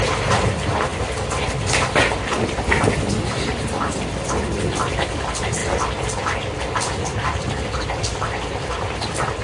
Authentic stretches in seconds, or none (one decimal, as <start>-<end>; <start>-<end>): 0.0-9.4